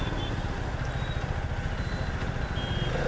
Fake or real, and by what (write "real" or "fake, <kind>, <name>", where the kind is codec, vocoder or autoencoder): real